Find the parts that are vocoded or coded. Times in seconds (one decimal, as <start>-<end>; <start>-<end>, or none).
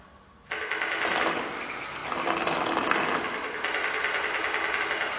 none